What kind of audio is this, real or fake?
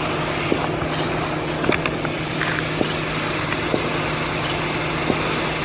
real